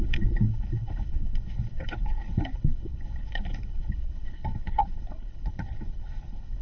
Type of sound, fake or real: fake